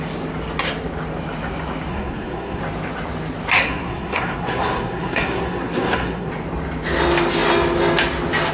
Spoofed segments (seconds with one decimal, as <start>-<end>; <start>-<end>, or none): 1.9-2.6; 3.6-6.3